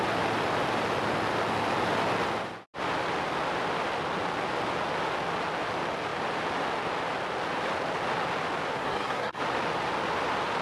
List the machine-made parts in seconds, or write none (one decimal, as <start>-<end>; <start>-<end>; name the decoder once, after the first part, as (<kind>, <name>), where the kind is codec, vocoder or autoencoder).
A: 8.7-9.4 (codec, SNAC)